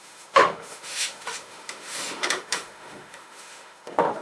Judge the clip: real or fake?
fake